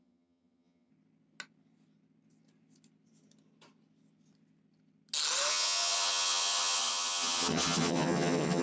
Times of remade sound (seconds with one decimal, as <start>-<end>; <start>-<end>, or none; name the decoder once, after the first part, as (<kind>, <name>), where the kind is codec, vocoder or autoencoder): 0.0-0.9 (vocoder, HiFi-GAN); 5.5-8.6